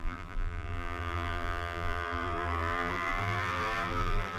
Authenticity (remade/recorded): remade